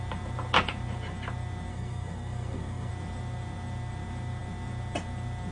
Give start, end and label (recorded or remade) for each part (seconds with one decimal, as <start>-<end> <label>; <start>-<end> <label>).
0.0-1.7 recorded; 1.7-2.9 remade; 2.9-5.5 recorded